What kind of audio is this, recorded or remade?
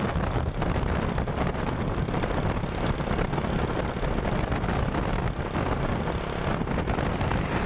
recorded